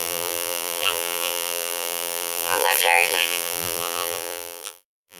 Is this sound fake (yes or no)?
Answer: yes